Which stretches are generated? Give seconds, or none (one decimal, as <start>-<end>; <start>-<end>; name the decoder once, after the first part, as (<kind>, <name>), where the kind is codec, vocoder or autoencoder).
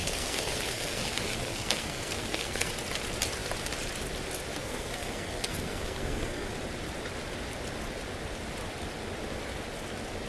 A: 0.0-2.7 (codec, SNAC); 4.5-6.5